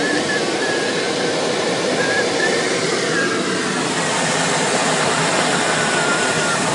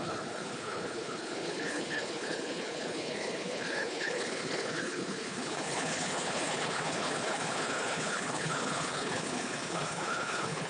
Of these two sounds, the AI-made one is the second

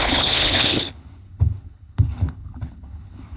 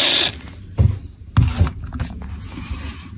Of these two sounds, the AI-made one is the first